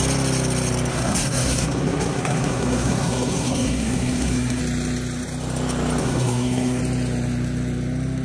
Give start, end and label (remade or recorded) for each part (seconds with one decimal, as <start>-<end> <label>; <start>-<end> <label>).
0.0-0.9 recorded; 0.9-4.6 remade; 4.6-6.0 recorded; 6.0-6.8 remade; 6.8-8.2 recorded